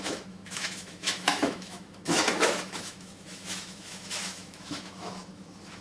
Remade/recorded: remade